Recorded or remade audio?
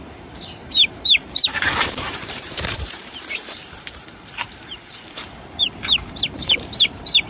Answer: remade